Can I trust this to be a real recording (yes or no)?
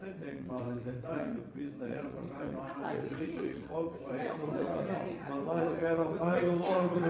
no